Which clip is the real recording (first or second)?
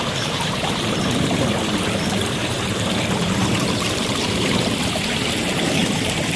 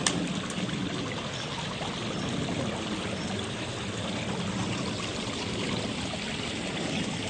second